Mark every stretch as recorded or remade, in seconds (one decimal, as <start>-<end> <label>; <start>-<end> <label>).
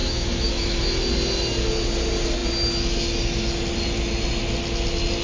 0.0-0.8 remade; 0.8-5.2 recorded